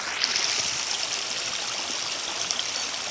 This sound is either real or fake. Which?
real